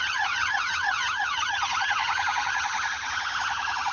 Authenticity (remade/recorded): remade